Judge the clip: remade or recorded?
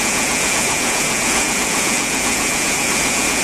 remade